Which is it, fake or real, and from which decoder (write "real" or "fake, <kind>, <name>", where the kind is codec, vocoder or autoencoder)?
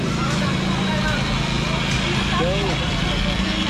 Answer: real